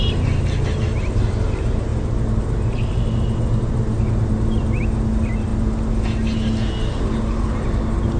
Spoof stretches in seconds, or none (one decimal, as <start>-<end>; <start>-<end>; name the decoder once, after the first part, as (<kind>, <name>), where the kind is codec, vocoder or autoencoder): none